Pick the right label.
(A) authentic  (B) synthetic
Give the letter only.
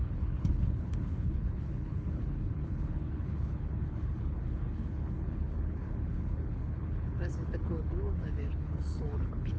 B